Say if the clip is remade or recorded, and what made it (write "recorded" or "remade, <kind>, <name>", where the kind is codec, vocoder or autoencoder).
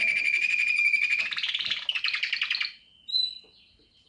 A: recorded